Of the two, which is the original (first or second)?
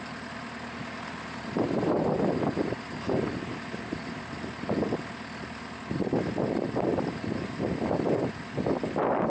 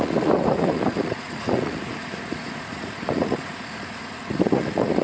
first